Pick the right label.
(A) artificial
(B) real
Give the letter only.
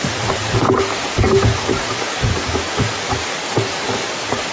A